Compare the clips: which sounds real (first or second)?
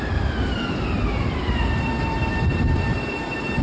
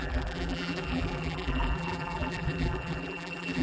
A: first